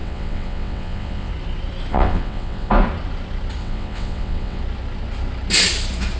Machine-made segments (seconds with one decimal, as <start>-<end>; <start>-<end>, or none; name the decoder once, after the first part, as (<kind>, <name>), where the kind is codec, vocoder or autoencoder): 0.0-1.3 (vocoder, WaveNeXt); 1.9-2.7; 3.6-4.6

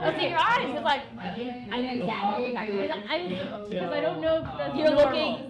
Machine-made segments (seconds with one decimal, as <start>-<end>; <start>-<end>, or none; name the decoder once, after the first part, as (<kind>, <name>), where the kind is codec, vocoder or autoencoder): 0.9-3.8 (autoencoder, DAC-VAE)

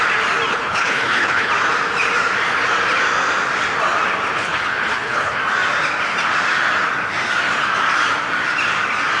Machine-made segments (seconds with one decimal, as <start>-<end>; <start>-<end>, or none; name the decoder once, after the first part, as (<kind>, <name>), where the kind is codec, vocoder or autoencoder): 0.5-1.5 (codec, HILCodec); 4.3-5.4

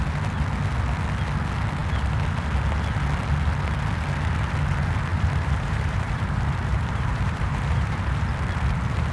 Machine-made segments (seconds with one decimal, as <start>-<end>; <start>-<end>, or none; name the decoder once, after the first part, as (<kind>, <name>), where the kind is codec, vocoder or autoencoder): 5.1-8.0 (vocoder, BigVGAN v2)

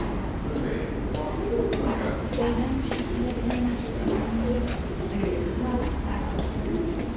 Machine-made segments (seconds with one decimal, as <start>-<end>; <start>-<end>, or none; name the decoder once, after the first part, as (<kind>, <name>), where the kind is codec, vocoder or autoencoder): none